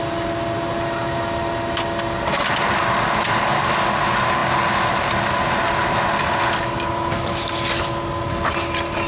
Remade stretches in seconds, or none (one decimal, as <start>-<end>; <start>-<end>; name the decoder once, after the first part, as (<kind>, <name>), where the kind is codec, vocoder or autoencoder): none